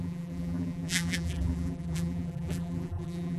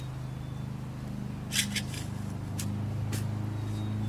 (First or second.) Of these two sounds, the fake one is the first